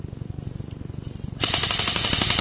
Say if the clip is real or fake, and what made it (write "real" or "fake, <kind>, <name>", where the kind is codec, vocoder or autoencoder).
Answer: real